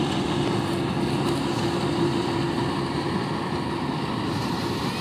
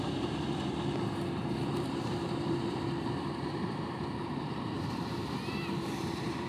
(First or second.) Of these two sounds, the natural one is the first